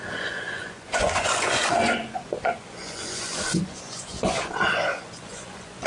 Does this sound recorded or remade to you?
remade